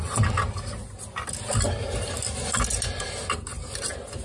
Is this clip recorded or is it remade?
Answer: recorded